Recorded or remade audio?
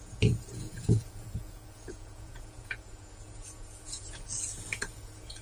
remade